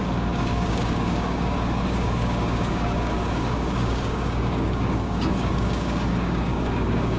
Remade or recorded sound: remade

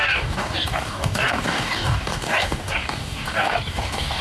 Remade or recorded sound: remade